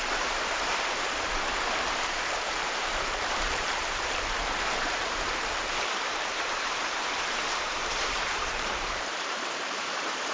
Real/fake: fake